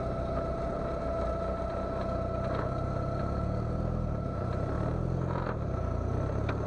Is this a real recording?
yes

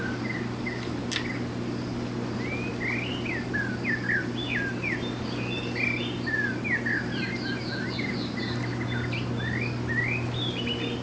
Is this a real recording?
yes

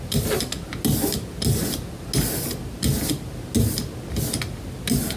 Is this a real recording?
yes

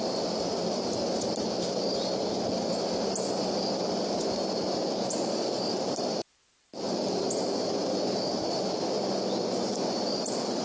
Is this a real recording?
no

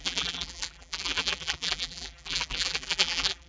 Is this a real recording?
no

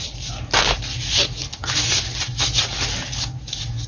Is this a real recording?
yes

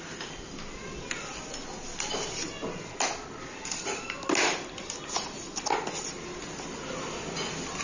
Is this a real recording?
yes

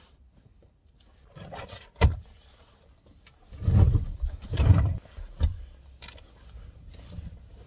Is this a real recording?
no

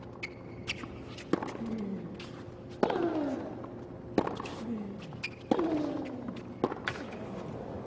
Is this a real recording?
yes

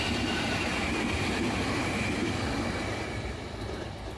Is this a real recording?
no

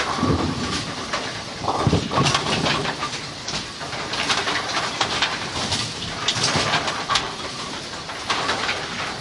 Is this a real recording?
no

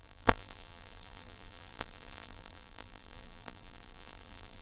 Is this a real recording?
no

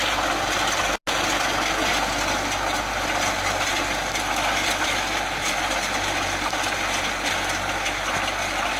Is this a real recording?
yes